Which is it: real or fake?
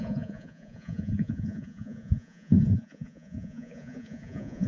fake